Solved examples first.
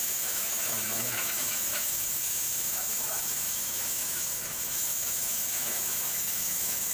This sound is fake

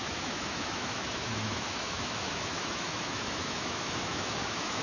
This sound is fake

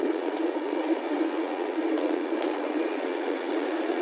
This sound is fake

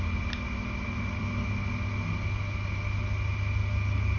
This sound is real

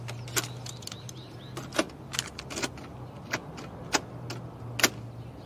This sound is real